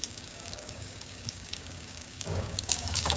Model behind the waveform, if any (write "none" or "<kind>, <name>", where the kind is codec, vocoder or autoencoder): codec, DAC